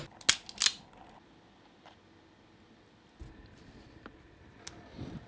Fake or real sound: real